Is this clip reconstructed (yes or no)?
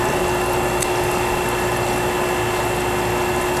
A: no